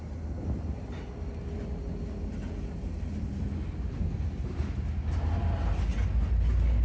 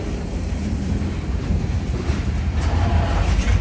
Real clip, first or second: first